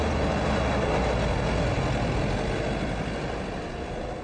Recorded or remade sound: recorded